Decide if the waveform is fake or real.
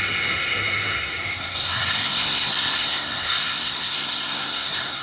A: fake